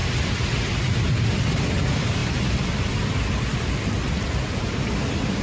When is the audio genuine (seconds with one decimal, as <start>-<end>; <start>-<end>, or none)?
0.0-5.4